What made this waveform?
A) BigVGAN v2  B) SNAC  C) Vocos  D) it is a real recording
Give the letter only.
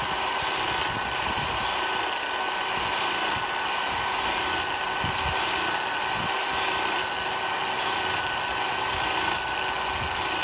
D